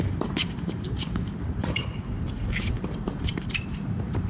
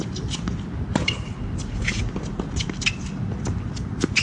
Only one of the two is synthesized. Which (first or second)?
first